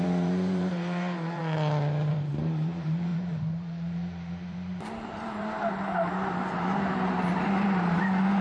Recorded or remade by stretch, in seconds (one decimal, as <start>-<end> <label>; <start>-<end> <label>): 0.0-1.4 remade; 1.4-2.1 recorded; 2.1-8.4 remade